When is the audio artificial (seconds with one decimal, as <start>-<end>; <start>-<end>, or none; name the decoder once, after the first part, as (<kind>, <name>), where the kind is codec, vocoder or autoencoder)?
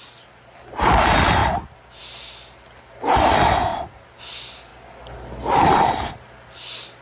3.7-4.2 (vocoder, BigVGAN v2)